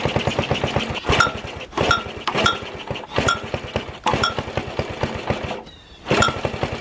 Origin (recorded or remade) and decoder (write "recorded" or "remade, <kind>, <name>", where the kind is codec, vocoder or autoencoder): recorded